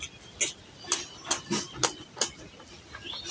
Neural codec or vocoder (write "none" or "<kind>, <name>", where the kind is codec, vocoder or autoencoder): none